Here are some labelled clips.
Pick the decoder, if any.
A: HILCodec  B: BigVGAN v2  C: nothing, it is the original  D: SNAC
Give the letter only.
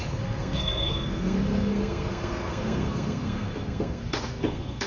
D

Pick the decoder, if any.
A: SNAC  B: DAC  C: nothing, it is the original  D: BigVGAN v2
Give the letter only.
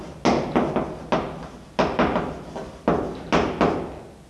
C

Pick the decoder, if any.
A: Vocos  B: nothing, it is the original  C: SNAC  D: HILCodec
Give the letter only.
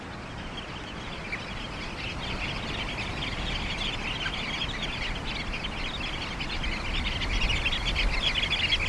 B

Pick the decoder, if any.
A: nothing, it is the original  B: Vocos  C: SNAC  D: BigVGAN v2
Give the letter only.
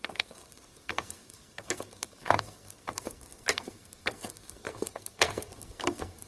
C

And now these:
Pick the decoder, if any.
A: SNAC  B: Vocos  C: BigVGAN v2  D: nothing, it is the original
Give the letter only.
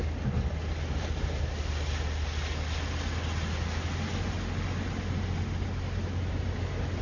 D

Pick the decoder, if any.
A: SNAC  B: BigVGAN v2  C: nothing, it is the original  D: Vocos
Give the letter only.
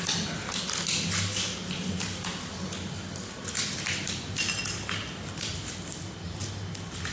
C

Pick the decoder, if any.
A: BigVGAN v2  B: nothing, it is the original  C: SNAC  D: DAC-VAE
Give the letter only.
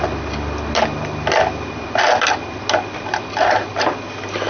B